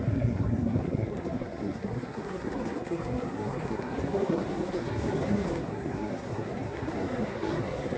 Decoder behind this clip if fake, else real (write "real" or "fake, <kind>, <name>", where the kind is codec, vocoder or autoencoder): fake, codec, SNAC